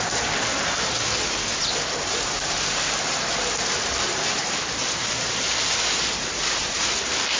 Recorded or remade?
remade